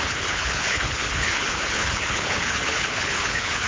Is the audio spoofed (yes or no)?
yes